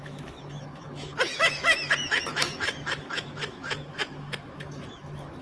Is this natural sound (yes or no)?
no